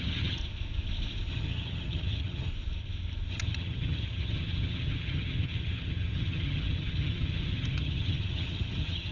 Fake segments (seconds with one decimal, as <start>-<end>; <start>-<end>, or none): 0.0-0.4; 1.3-2.5; 3.3-9.1